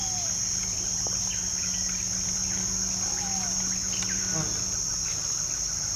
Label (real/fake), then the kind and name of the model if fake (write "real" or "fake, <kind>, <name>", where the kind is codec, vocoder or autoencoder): real